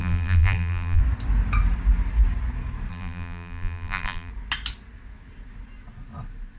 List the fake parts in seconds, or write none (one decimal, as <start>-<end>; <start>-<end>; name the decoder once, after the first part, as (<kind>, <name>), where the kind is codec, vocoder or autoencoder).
0.0-1.0 (vocoder, BigVGAN v2); 2.9-4.3